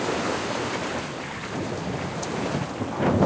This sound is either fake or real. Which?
real